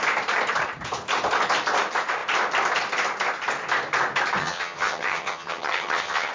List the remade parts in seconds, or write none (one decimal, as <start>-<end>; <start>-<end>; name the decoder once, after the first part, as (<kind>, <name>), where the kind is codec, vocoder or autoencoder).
4.4-6.3 (vocoder, HiFi-GAN)

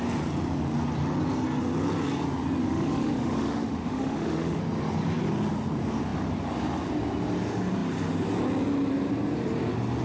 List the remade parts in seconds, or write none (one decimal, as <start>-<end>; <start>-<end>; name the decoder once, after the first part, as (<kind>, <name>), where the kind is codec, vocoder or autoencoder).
2.6-4.6 (autoencoder, DAC-VAE)

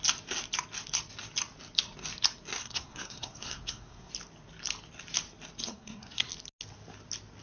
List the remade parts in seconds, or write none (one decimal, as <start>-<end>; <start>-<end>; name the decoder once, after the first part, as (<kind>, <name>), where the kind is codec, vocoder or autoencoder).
2.6-4.1 (codec, SNAC); 5.7-6.3

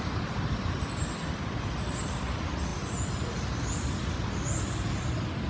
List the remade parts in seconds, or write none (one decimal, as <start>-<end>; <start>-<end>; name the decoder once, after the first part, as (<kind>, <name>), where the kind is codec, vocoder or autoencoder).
none

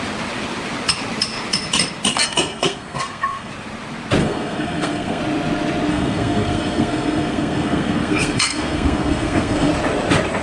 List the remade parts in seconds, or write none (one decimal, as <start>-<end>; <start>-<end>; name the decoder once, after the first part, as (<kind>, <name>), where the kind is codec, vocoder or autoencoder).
2.1-3.5 (codec, SNAC); 4.2-5.2; 5.9-9.7

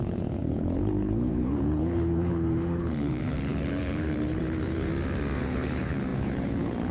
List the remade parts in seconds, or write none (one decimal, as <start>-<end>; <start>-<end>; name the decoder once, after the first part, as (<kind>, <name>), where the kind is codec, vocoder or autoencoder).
0.0-4.9 (codec, HILCodec); 5.4-6.9